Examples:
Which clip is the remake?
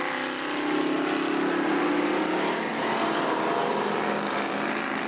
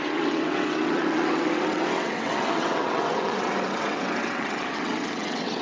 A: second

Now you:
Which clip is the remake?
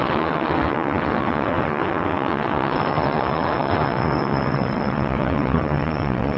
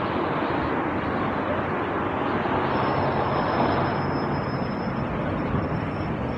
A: first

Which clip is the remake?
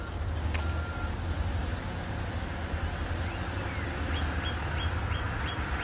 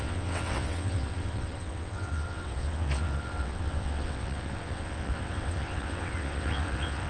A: second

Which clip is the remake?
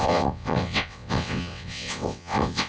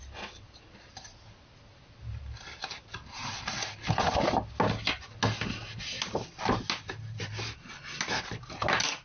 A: first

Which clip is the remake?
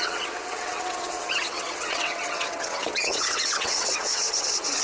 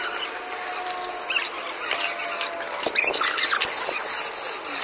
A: first